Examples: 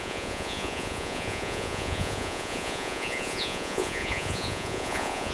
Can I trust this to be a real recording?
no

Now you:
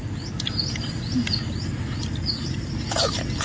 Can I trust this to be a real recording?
yes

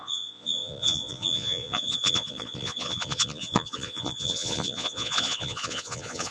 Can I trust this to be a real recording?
no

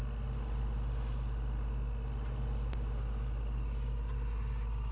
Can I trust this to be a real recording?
yes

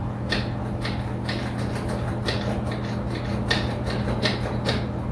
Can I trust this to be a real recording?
yes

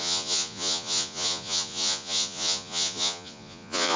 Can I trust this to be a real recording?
no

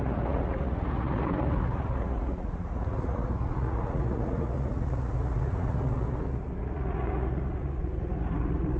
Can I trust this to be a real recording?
no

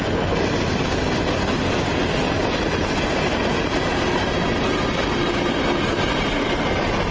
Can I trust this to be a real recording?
yes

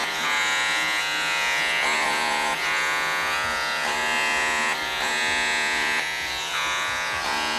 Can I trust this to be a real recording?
no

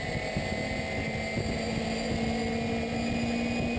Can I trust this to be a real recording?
yes